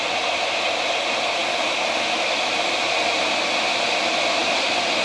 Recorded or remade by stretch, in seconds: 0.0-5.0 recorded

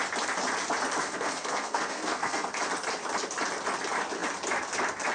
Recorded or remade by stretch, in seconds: 0.0-1.0 recorded; 1.0-2.5 remade; 2.5-5.1 recorded